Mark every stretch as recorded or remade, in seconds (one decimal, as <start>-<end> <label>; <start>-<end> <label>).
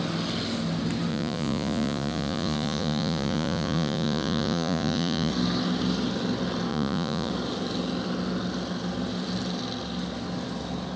0.0-1.1 recorded; 1.1-5.3 remade; 5.3-6.7 recorded; 6.7-7.3 remade; 7.3-11.0 recorded